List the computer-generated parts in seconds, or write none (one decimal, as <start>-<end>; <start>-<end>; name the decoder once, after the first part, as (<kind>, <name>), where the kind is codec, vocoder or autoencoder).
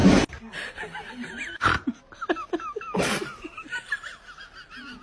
none